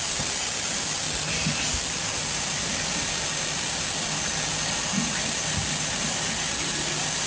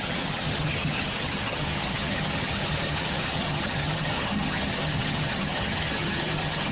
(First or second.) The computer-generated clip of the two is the second